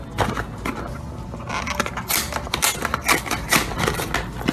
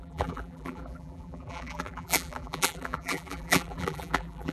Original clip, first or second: first